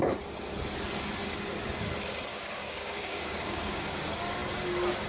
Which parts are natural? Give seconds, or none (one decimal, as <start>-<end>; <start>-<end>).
0.0-2.3; 3.9-5.1